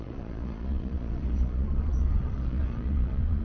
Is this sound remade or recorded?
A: remade